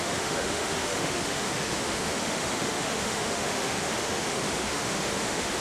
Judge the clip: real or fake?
fake